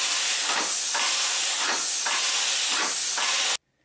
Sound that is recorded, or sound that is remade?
recorded